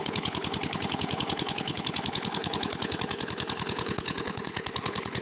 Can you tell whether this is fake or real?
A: fake